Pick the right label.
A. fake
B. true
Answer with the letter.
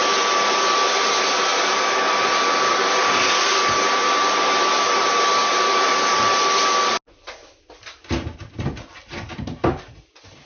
B